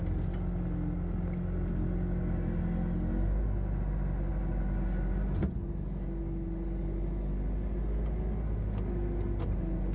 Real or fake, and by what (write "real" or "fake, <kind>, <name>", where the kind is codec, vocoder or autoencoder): real